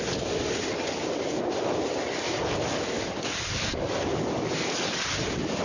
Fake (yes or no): no